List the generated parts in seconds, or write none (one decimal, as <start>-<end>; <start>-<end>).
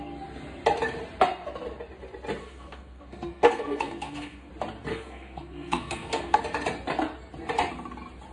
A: 2.4-4.5; 4.9-6.4